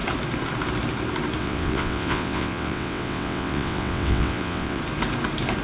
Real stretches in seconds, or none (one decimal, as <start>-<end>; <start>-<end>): 0.0-1.4; 4.8-5.6